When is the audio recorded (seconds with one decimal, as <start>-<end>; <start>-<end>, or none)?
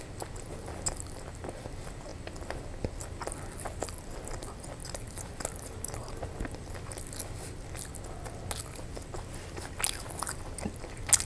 0.0-11.3